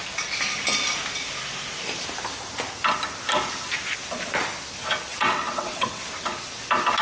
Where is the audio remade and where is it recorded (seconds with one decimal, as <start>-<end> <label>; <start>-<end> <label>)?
0.0-5.1 recorded; 5.1-6.0 remade; 6.0-7.0 recorded